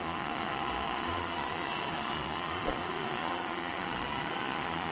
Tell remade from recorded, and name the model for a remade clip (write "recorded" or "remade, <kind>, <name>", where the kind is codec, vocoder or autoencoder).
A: remade, vocoder, Vocos